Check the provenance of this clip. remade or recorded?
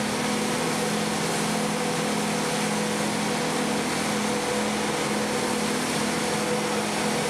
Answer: recorded